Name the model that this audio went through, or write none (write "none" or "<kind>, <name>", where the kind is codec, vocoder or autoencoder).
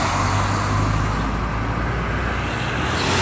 none